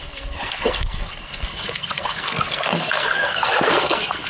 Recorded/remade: remade